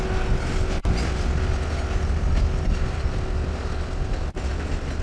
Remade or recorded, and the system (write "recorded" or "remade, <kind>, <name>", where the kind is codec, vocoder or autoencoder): recorded